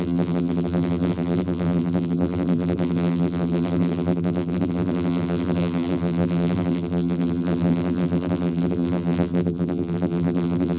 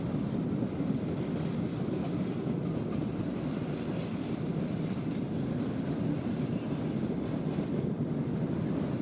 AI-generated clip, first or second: first